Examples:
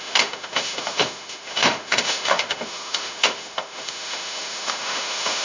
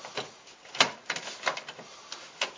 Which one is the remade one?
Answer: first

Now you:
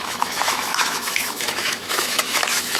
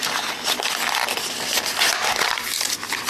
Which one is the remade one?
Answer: first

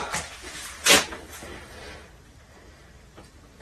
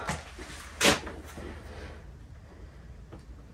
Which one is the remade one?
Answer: first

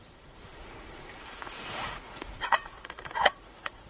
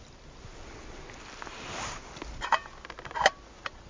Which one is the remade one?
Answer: first